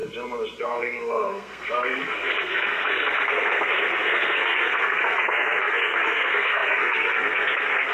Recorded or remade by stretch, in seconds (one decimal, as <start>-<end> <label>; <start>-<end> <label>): 0.0-0.6 recorded; 0.6-7.9 remade